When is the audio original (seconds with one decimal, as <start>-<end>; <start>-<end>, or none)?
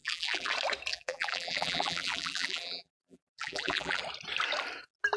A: 0.5-0.9; 4.0-5.2